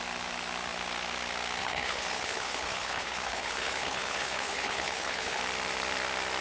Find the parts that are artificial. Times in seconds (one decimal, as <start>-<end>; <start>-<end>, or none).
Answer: 1.6-5.4